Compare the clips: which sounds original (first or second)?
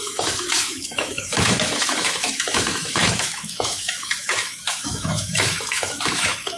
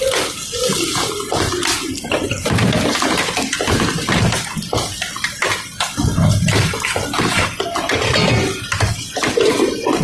second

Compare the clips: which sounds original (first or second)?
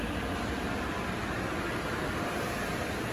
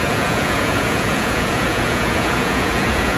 first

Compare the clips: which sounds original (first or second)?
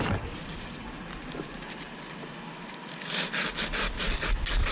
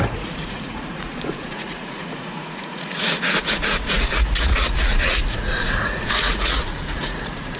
first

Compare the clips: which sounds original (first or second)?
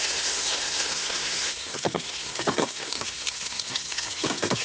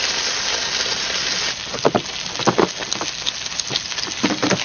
second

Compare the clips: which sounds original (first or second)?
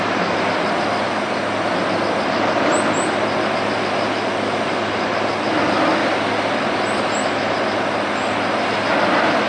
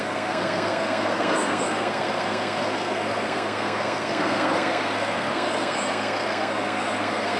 first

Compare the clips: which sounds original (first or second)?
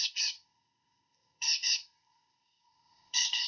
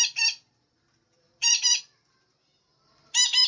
second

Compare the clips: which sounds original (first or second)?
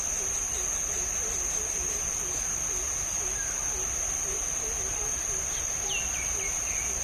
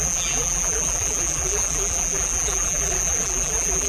first